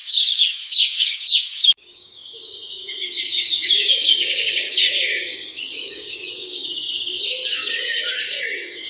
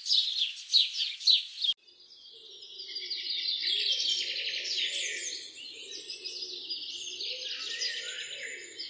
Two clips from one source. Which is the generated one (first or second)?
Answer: first